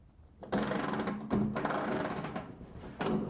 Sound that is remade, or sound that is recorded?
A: remade